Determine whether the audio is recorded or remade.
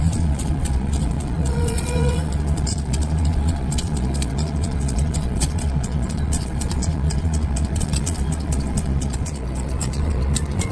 remade